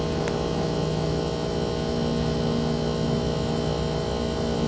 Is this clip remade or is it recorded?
recorded